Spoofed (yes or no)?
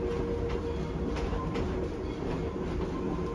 no